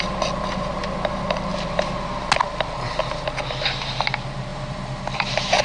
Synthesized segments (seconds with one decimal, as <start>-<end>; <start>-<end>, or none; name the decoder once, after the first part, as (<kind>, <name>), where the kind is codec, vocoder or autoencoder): 4.5-5.6 (vocoder, BigVGAN v2)